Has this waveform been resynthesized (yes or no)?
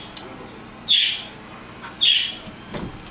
no